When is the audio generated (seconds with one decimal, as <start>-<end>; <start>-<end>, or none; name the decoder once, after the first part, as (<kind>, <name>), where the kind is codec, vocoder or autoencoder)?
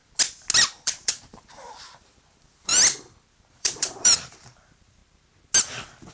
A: 0.8-2.7 (vocoder, BigVGAN v2); 3.5-5.0